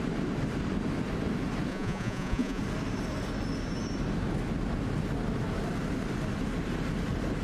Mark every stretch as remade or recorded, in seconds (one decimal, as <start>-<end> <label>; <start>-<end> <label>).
0.0-1.7 recorded; 1.7-2.6 remade; 2.6-7.4 recorded